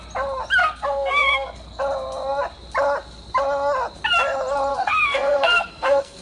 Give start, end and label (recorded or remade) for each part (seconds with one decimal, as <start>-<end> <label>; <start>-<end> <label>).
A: 0.0-0.6 recorded; 0.6-1.8 remade; 1.8-4.7 recorded; 4.7-6.2 remade